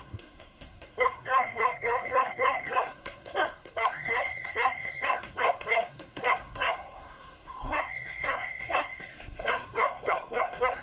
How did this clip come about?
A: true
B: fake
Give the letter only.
B